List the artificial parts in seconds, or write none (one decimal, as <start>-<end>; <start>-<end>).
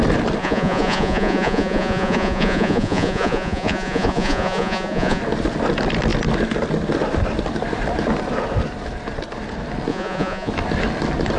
0.4-5.2; 9.9-10.5